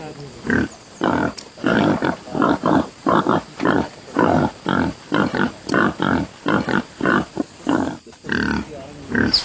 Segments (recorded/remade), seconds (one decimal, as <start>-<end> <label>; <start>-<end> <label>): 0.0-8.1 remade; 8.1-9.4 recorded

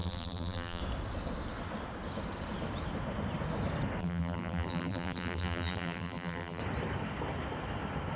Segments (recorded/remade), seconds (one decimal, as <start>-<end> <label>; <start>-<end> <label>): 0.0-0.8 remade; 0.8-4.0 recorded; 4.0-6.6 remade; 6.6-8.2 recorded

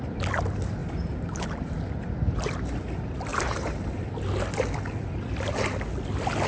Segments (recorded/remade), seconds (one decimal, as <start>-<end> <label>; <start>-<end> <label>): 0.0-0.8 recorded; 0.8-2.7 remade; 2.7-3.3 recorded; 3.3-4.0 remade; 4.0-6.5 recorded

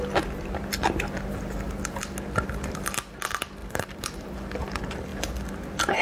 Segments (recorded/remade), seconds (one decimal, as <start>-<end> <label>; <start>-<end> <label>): 0.0-3.6 recorded; 3.6-4.5 remade; 4.5-6.0 recorded